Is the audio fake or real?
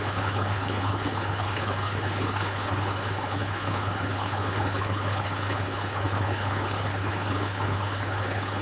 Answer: fake